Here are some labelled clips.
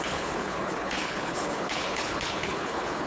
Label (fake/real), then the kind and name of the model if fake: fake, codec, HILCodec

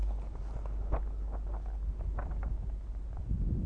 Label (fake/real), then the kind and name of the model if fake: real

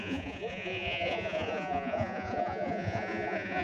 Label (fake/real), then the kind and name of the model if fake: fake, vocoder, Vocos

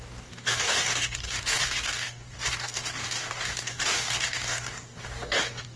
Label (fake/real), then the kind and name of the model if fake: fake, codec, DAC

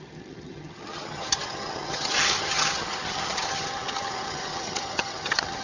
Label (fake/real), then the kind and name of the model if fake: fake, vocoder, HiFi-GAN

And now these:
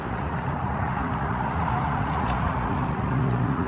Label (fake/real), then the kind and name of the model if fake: fake, vocoder, Vocos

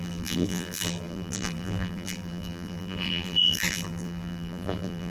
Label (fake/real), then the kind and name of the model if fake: fake, vocoder, BigVGAN v2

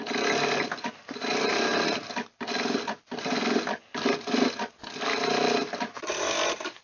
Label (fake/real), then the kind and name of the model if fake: real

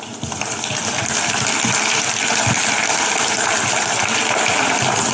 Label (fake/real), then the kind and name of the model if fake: real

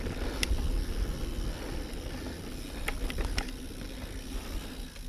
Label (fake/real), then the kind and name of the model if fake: real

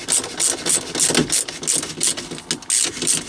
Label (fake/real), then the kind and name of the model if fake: real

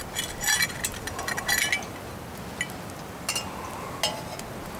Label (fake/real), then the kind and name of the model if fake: real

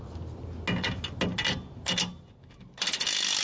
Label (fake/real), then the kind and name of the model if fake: real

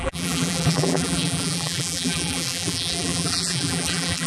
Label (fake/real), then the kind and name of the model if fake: fake, vocoder, BigVGAN v2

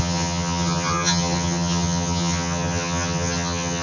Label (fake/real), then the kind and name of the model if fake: fake, vocoder, HiFi-GAN